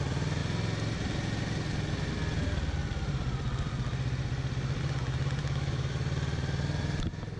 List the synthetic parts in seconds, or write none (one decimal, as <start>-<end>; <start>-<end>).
5.4-5.9

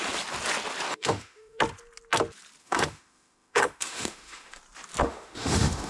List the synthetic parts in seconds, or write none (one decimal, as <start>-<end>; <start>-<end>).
0.9-1.6; 2.6-4.6; 5.0-5.9

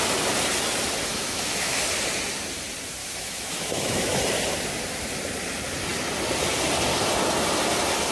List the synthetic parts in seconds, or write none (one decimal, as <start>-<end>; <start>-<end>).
1.1-1.8; 3.0-4.2

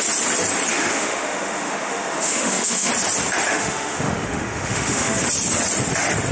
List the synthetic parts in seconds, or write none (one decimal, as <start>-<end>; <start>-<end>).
0.7-2.9; 3.5-5.2

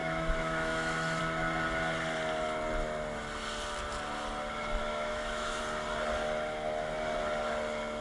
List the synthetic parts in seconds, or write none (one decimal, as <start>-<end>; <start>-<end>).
0.0-1.2; 4.8-5.6

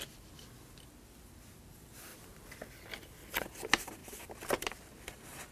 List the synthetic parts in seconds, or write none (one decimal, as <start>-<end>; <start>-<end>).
none

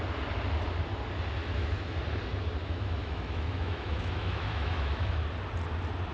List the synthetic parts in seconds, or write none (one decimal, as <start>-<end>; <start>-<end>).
1.4-2.0; 2.6-5.1